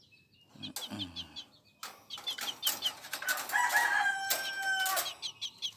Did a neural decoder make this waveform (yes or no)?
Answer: no